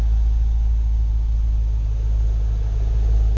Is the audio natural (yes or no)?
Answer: yes